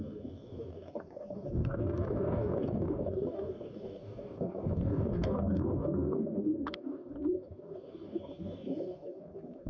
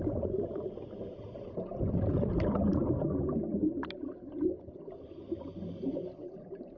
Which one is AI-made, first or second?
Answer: first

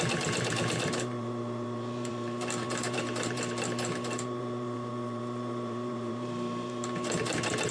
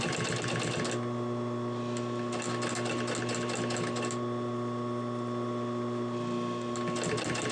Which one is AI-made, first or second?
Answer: first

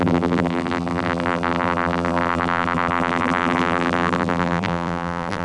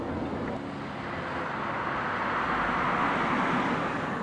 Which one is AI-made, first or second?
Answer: first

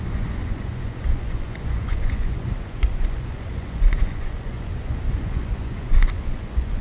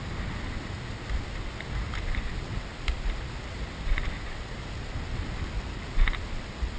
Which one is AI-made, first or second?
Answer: first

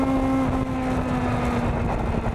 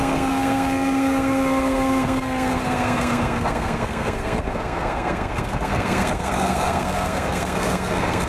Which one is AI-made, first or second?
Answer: second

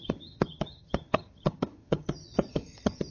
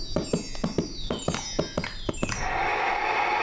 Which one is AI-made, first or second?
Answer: first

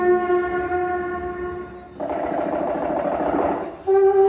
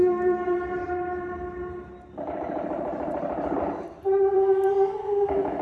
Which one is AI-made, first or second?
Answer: second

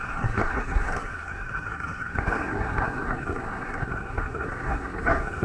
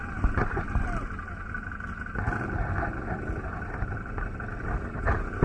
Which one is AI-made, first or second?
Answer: first